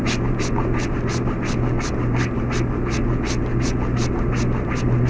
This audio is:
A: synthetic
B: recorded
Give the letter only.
B